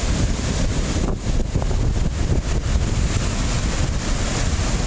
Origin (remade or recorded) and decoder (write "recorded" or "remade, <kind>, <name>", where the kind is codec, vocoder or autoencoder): recorded